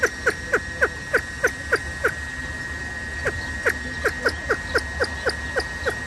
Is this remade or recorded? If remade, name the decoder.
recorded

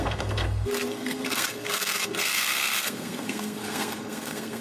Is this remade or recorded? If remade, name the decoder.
remade, codec, SNAC